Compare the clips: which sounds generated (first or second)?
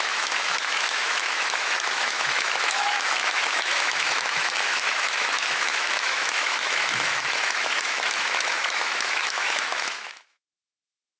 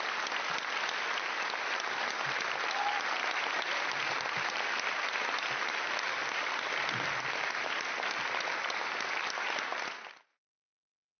first